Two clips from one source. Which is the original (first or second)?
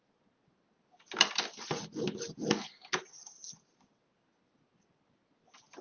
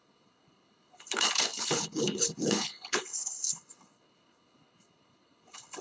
first